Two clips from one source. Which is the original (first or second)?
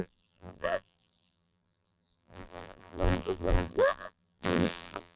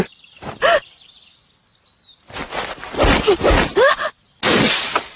second